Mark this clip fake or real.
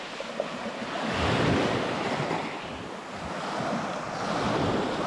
real